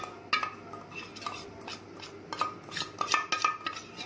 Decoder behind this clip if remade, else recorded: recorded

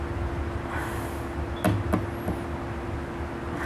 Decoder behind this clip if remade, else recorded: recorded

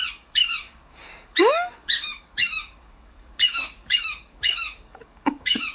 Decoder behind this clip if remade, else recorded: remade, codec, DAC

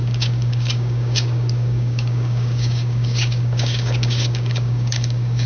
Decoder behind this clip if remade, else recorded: remade, codec, DAC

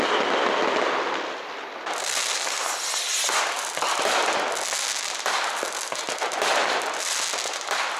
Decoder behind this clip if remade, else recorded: recorded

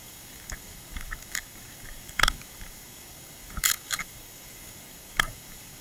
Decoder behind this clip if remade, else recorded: remade, codec, DAC